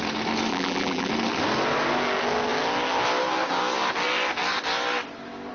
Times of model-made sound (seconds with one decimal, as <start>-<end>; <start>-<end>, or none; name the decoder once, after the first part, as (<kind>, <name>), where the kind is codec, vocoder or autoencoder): 0.5-1.1 (vocoder, BigVGAN v2)